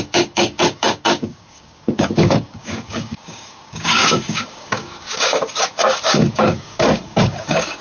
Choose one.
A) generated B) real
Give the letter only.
A